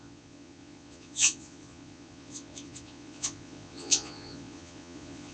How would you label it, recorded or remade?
remade